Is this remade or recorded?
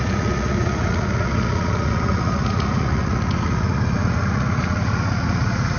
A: remade